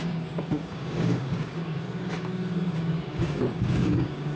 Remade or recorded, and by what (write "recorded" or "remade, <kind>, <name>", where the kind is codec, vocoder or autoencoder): remade, codec, DAC